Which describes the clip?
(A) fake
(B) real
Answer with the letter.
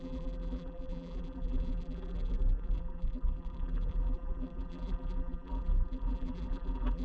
A